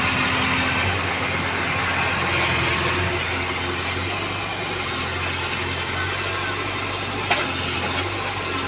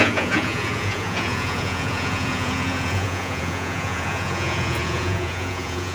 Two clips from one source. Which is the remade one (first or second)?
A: second